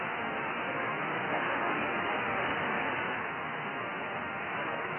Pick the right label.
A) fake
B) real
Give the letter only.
A